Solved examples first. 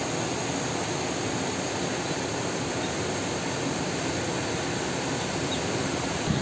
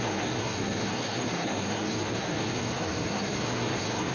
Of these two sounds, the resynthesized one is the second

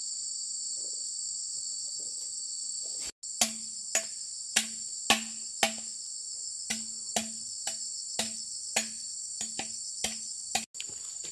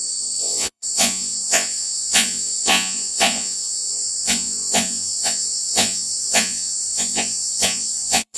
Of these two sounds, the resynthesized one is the second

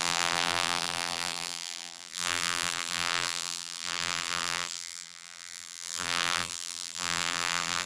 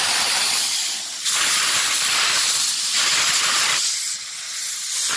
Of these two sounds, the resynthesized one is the first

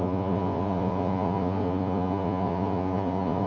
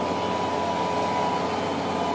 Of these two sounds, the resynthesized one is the first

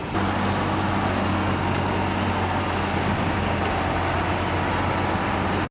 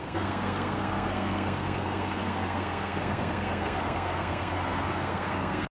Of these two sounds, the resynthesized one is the second